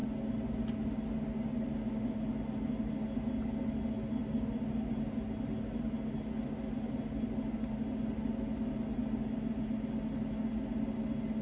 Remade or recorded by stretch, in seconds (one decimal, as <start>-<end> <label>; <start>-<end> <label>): 0.0-11.4 recorded